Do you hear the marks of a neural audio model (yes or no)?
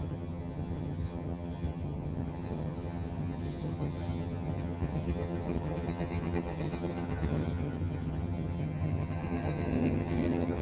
yes